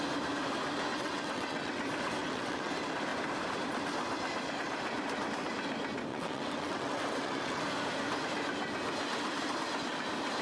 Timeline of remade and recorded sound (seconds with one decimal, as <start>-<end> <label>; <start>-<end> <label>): 0.0-0.9 recorded; 0.9-1.8 remade; 1.8-2.2 recorded; 2.2-2.7 remade; 2.7-6.1 recorded; 6.1-7.6 remade; 7.6-10.4 recorded